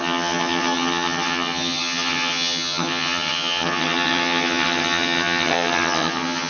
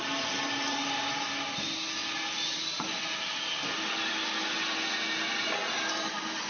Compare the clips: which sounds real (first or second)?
second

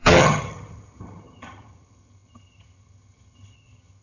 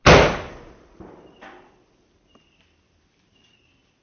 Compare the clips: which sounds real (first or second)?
second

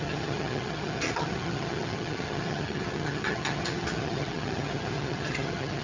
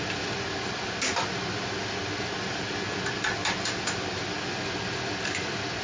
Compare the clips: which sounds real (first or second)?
second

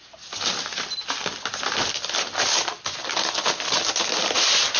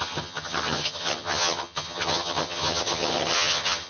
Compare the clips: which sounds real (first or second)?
first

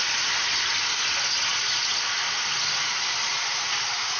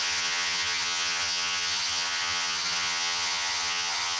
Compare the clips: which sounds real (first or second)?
first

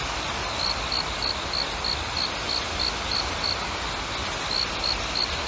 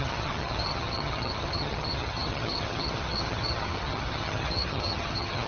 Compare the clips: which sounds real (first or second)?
first